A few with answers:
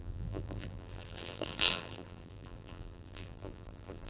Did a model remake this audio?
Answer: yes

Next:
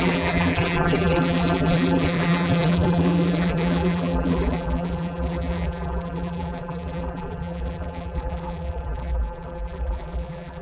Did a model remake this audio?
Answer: yes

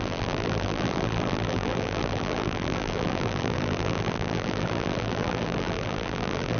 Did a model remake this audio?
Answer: yes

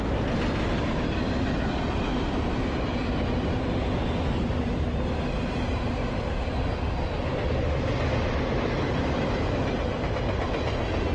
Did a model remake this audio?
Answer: no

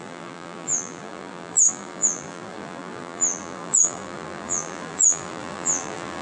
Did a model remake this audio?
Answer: yes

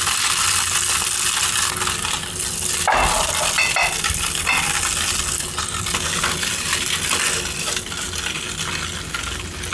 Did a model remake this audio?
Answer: no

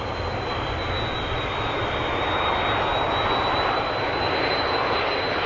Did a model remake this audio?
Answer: no